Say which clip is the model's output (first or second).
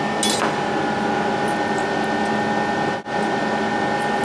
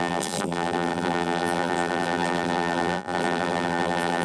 second